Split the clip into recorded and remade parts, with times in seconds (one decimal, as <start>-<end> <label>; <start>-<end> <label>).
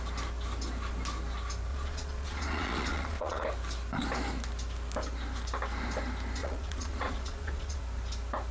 0.0-1.7 recorded; 1.7-3.4 remade; 3.4-6.4 recorded; 6.4-7.8 remade; 7.8-8.5 recorded